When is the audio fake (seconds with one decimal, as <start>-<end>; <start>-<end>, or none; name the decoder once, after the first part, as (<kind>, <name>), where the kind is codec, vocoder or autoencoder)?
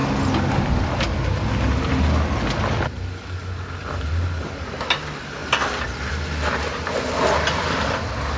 none